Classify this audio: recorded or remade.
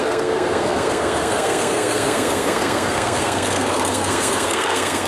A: remade